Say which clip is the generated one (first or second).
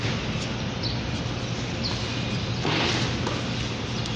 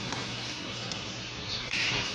second